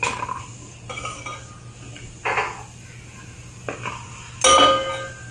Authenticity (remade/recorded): recorded